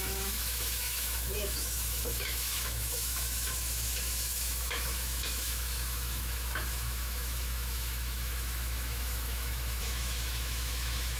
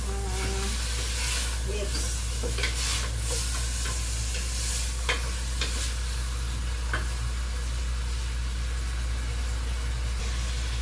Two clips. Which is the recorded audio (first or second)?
second